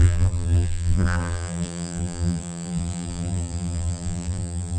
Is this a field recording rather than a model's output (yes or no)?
no